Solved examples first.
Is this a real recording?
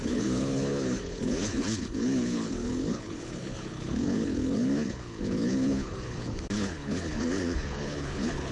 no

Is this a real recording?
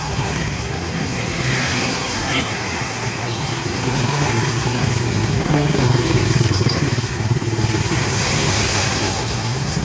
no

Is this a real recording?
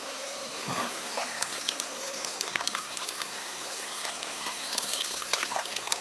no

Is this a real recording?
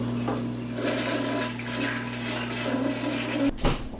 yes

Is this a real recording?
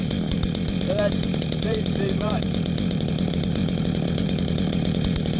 no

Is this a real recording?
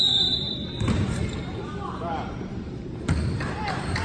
no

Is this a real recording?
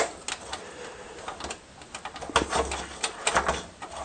yes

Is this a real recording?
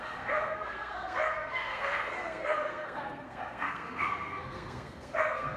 no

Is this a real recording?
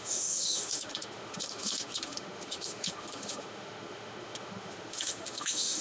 no